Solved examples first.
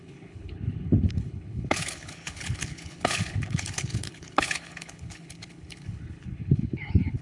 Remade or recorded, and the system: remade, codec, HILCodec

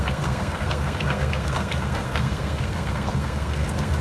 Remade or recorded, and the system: remade, codec, SNAC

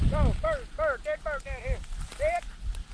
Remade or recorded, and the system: recorded